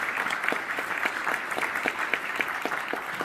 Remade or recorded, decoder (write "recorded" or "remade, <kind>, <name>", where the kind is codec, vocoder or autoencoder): recorded